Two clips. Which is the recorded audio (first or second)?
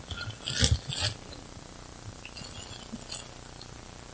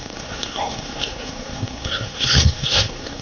first